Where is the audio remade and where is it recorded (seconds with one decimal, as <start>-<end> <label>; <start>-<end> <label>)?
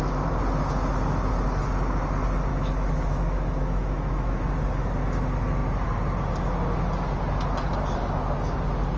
0.0-2.5 recorded; 2.5-4.4 remade; 4.4-9.0 recorded